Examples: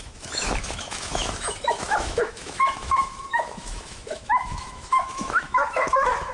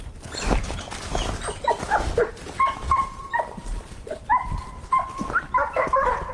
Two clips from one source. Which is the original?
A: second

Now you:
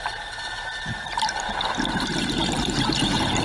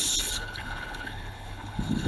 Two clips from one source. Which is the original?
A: first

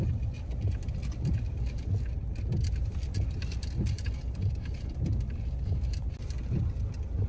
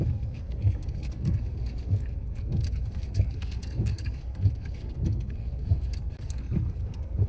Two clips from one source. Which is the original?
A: first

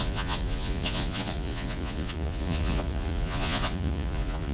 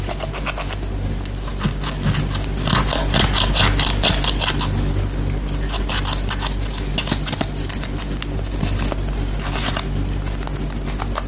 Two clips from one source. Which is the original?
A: second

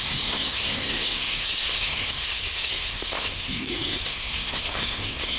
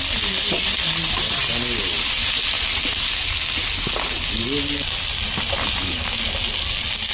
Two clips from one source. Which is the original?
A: second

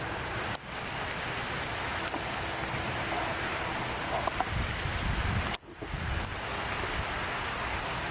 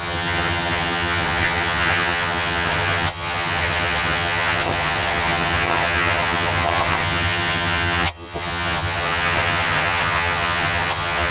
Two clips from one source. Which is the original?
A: first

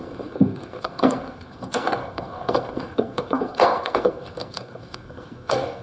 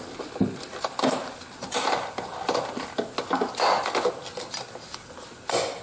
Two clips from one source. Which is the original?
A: second